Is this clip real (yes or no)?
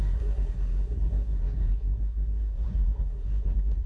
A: no